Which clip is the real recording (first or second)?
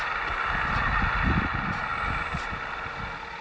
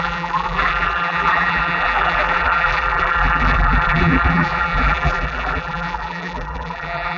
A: first